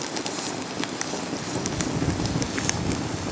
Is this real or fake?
real